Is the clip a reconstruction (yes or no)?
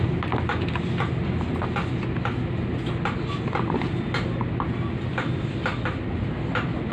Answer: no